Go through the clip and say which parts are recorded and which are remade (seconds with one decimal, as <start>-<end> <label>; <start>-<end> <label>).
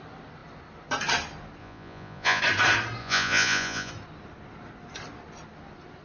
0.0-1.6 recorded; 1.6-2.4 remade; 2.4-3.0 recorded; 3.0-3.9 remade; 3.9-6.0 recorded